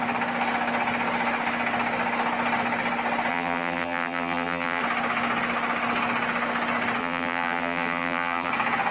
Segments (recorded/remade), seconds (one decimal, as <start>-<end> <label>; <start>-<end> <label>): 0.0-3.3 recorded; 3.3-4.8 remade; 4.8-7.0 recorded; 7.0-8.5 remade; 8.5-8.9 recorded